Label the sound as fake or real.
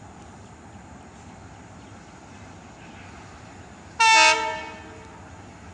real